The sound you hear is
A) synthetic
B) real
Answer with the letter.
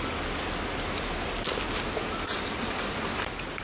B